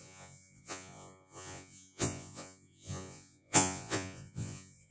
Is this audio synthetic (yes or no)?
yes